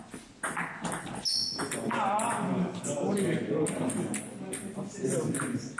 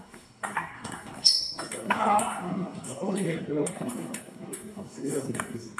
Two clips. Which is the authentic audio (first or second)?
first